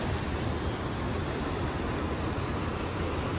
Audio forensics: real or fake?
real